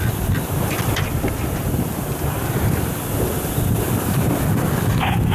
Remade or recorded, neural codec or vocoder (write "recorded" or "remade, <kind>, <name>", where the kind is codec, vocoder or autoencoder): recorded